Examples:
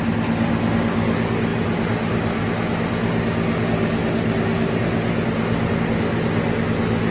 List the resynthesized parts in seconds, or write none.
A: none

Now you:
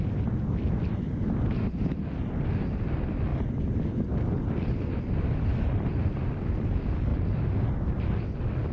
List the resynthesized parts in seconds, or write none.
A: 3.3-6.6